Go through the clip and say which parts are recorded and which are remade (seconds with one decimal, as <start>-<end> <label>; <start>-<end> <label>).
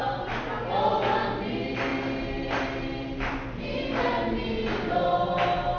0.0-5.8 recorded